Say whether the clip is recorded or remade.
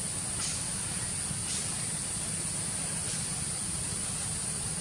recorded